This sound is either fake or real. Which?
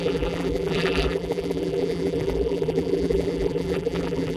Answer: fake